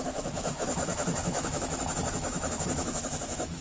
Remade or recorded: remade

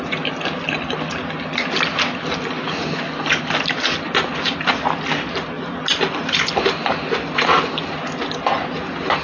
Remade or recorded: recorded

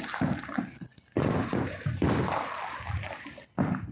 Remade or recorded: recorded